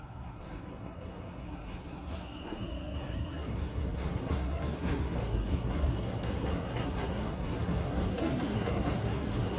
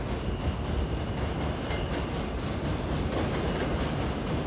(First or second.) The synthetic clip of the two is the first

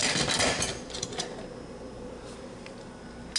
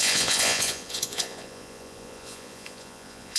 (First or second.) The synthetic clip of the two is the second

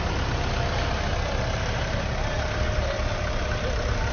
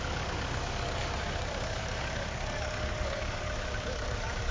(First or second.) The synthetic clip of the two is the second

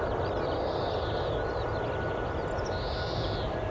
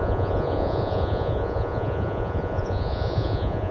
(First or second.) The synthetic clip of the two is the second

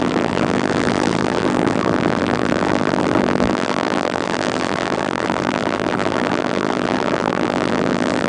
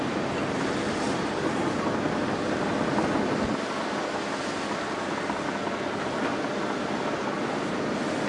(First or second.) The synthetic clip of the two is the first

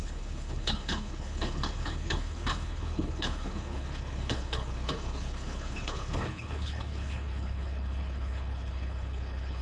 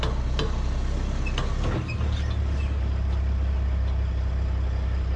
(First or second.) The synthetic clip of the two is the first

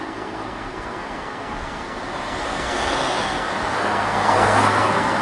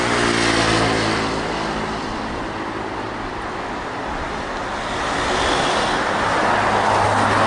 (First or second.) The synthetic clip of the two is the first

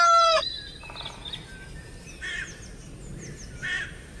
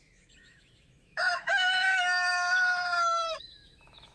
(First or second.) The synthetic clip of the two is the second